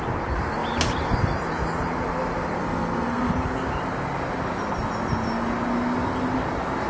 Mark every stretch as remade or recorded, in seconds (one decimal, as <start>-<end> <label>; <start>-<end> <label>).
0.0-2.6 recorded; 2.6-3.3 remade; 3.3-6.9 recorded